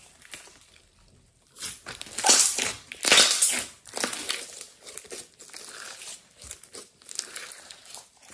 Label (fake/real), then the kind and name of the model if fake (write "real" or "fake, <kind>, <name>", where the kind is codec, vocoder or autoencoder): real